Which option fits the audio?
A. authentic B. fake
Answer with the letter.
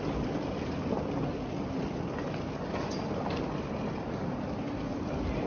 A